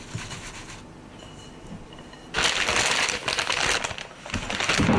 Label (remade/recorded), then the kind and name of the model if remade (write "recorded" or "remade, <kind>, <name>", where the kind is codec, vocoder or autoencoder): recorded